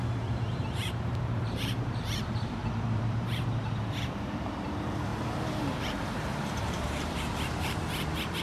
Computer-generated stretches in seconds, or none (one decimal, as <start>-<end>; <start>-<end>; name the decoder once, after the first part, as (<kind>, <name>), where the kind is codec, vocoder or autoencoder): 0.0-8.4 (vocoder, BigVGAN v2)